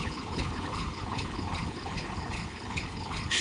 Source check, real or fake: fake